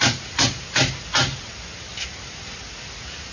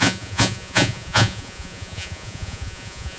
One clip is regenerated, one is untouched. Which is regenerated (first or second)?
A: second